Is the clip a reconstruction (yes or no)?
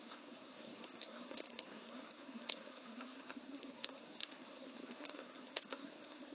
yes